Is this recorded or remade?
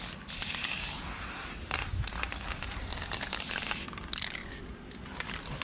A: recorded